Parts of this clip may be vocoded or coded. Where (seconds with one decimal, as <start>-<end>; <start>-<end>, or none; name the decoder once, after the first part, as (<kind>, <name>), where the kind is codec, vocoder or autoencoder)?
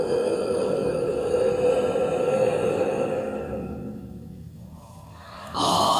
0.0-1.5 (codec, DAC); 2.2-6.0